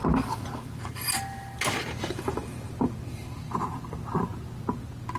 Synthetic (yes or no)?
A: no